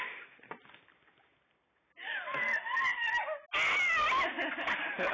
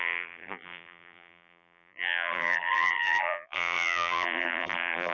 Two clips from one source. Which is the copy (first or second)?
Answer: second